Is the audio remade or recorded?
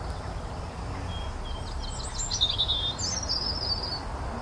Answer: recorded